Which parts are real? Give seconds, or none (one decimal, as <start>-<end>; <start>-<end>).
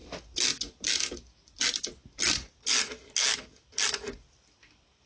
0.0-5.1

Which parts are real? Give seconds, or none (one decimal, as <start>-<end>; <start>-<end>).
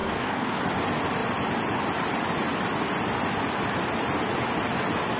0.6-5.2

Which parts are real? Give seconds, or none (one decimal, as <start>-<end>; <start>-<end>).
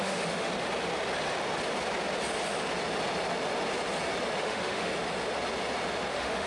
0.5-4.4; 4.9-6.1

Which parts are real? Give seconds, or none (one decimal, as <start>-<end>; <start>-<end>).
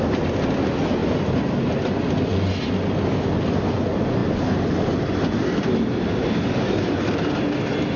0.0-8.0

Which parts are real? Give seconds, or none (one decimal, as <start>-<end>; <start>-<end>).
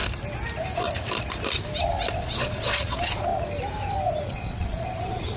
0.0-2.1; 3.3-4.2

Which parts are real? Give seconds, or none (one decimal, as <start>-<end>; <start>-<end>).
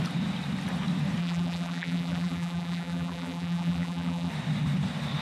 0.0-1.2; 4.3-5.2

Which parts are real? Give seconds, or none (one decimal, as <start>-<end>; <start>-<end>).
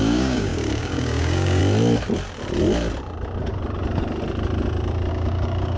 1.6-5.1